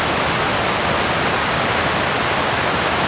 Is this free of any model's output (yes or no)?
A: yes